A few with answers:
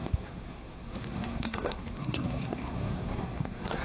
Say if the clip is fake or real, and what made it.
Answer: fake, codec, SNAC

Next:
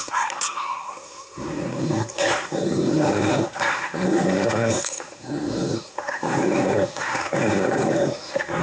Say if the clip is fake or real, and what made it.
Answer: fake, codec, SNAC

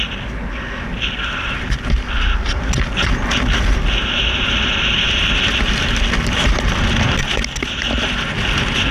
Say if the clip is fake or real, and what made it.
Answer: real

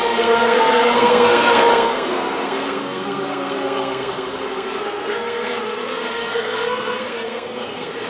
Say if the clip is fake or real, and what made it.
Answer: fake, codec, SNAC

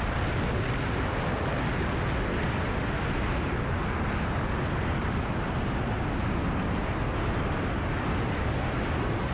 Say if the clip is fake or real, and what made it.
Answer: real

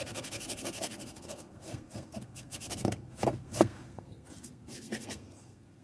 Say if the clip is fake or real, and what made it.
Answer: fake, codec, SNAC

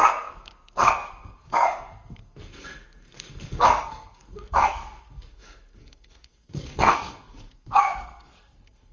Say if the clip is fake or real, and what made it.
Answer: fake, codec, SNAC